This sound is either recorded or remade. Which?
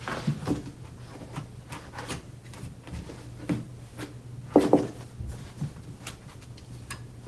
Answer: recorded